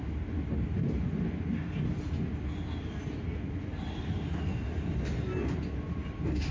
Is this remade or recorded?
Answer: recorded